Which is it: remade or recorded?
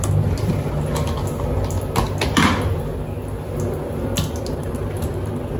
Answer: recorded